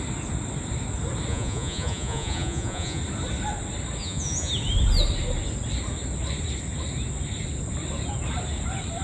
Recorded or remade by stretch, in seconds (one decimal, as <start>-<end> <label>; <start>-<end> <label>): 0.0-1.3 recorded; 1.3-3.0 remade; 3.0-4.0 recorded; 4.0-4.5 remade; 4.5-9.0 recorded